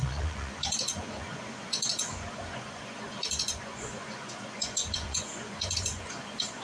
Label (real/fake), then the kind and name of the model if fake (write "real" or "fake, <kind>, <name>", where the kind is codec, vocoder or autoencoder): fake, vocoder, Vocos